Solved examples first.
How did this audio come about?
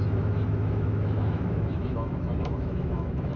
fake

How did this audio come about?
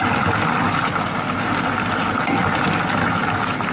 real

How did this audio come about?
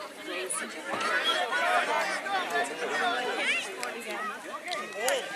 real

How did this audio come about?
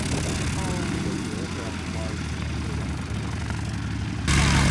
real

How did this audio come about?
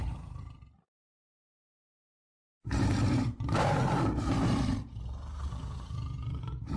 fake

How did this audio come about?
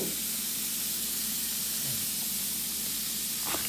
real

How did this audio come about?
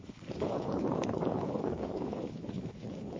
fake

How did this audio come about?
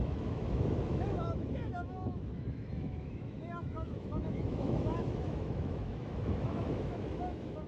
fake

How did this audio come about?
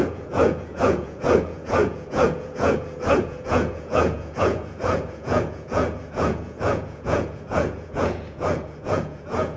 fake